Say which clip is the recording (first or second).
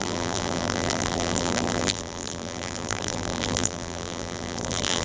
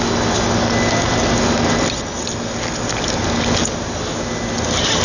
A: second